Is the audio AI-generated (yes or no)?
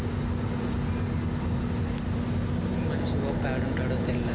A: no